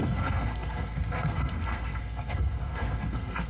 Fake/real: fake